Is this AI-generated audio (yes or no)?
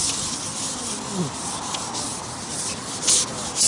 no